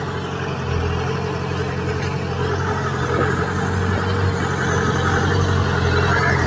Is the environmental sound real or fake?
real